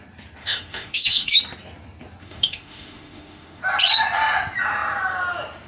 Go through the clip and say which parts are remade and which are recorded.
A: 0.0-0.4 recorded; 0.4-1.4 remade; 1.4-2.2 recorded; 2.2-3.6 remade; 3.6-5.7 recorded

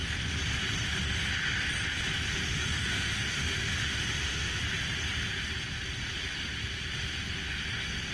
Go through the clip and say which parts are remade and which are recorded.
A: 0.0-2.5 recorded; 2.5-4.6 remade; 4.6-8.1 recorded

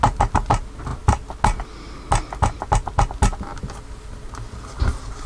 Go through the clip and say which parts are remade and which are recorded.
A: 0.0-5.3 recorded

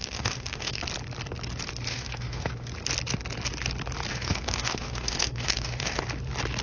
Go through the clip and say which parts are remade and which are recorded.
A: 0.0-0.8 remade; 0.8-1.9 recorded; 1.9-2.5 remade; 2.5-4.1 recorded; 4.1-6.0 remade; 6.0-6.6 recorded